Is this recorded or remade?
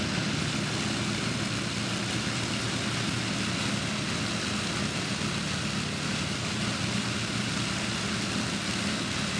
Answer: recorded